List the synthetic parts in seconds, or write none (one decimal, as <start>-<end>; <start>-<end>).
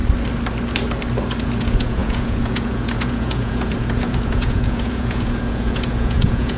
1.4-6.6